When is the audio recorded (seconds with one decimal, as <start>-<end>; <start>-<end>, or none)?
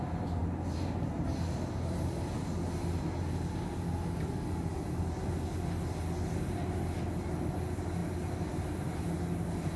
0.0-9.8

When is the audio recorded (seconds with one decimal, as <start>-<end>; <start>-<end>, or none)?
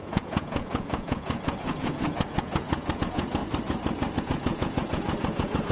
3.4-4.2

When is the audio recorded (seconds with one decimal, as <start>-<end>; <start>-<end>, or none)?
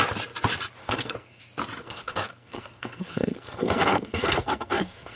0.0-0.8; 1.4-1.8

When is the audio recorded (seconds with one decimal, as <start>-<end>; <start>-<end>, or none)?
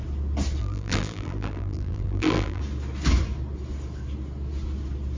0.0-0.6; 2.6-5.2